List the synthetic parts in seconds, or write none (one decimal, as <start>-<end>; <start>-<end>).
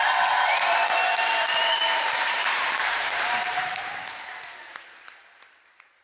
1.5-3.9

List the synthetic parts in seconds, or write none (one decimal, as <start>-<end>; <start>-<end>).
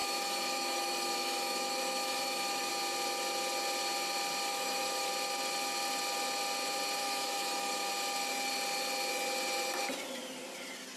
0.0-2.7; 4.5-5.1; 7.0-7.9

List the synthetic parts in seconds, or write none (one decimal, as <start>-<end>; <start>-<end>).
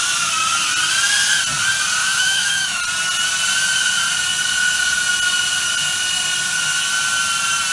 2.0-2.8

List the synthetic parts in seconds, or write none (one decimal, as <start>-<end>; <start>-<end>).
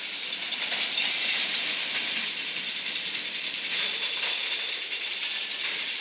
0.0-6.0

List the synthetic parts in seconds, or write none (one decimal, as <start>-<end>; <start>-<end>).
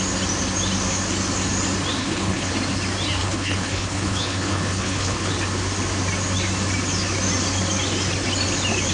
2.0-2.5; 3.2-5.3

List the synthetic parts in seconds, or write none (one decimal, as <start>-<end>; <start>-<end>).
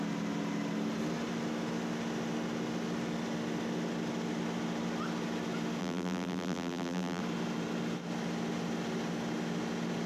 5.8-7.2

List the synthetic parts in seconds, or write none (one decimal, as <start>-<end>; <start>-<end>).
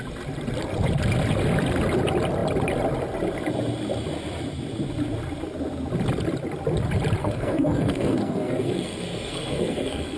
7.2-10.2